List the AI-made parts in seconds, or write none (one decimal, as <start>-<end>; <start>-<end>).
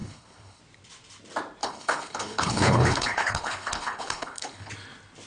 0.0-0.6; 1.6-4.7